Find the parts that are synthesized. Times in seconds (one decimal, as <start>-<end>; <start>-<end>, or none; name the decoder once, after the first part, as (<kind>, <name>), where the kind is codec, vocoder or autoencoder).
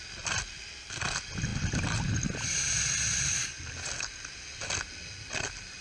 none